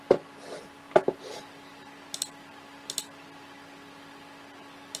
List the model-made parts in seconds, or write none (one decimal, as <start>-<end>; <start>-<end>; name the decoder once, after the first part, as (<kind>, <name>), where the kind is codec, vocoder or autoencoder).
none